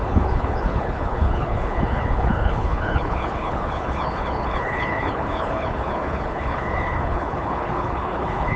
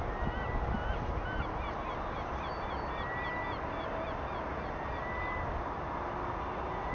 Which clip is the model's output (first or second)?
first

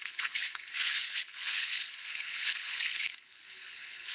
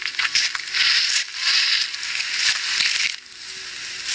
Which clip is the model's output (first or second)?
first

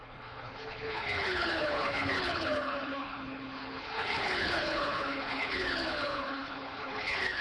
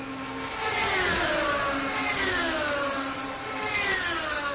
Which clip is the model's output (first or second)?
first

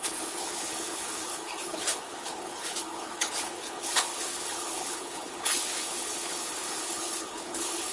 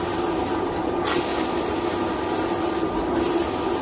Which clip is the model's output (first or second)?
first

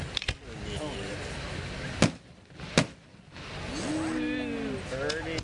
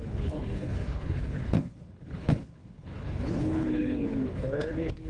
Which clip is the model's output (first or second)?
second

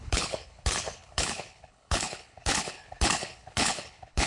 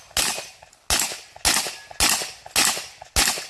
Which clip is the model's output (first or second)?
first